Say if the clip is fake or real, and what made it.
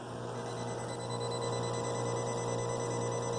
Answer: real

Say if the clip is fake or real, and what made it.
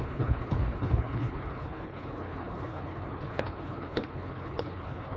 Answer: fake, codec, HILCodec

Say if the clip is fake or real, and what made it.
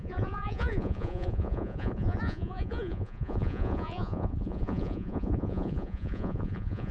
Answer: fake, vocoder, Vocos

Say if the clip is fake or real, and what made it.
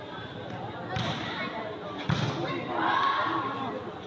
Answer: real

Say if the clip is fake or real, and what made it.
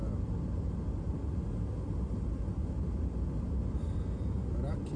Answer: real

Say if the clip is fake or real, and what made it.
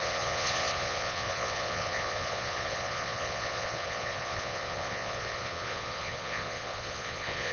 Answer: fake, vocoder, Vocos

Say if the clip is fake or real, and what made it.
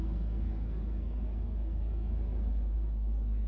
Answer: fake, codec, SNAC